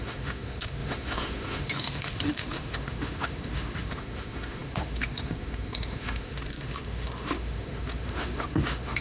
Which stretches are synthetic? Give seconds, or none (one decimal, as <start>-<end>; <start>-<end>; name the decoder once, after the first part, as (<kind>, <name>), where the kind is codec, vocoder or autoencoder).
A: 0.0-9.0 (autoencoder, DAC-VAE)